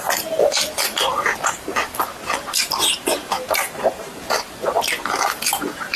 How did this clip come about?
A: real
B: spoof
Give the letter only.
B